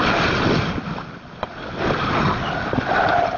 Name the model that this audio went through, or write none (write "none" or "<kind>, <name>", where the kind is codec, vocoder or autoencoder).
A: none